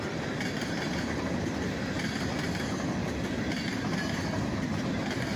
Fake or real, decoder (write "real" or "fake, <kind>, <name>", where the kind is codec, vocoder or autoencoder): real